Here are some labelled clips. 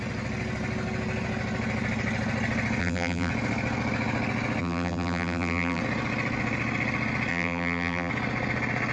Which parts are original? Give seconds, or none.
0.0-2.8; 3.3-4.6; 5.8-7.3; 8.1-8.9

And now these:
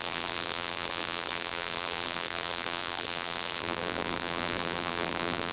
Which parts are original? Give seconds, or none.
none

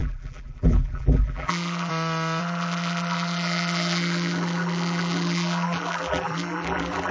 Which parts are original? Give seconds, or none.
1.9-2.4

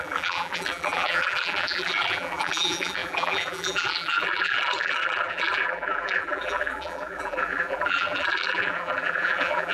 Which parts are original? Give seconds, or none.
none